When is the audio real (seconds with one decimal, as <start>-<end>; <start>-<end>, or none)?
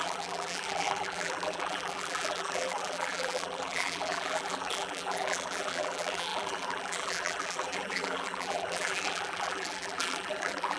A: none